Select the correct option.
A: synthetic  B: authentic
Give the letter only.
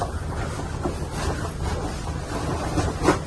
B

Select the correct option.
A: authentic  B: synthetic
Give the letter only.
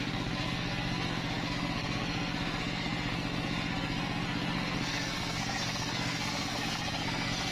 B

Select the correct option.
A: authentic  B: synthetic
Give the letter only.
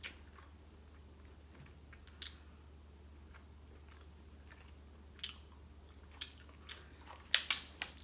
A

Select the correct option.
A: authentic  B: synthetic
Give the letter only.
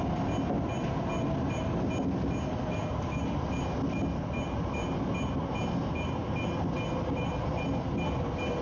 A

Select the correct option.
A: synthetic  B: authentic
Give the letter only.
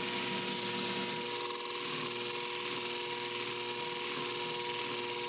B